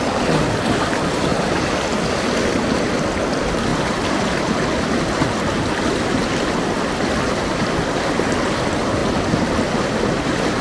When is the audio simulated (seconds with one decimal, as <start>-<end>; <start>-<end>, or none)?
none